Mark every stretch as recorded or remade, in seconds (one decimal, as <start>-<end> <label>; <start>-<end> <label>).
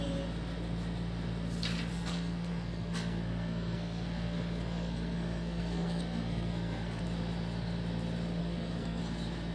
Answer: 0.0-1.9 recorded; 1.9-7.0 remade; 7.0-8.4 recorded; 8.4-9.0 remade; 9.0-9.5 recorded